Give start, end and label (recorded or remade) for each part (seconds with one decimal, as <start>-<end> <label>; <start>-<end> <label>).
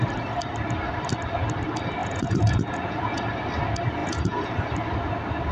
0.0-2.0 recorded; 2.0-3.2 remade; 3.2-4.0 recorded; 4.0-4.5 remade; 4.5-5.5 recorded